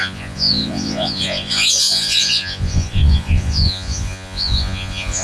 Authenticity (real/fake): fake